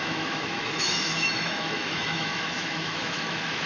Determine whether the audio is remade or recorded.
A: remade